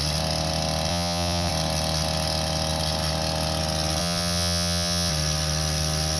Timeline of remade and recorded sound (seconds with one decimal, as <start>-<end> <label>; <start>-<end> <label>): 0.0-0.9 recorded; 0.9-1.5 remade; 1.5-4.0 recorded; 4.0-5.1 remade; 5.1-6.2 recorded